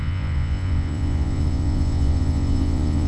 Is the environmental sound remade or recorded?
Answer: remade